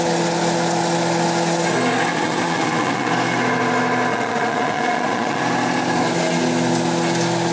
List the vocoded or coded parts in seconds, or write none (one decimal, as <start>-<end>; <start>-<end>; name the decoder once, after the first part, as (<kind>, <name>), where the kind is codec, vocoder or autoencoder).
2.1-3.1 (vocoder, Vocos); 4.1-5.4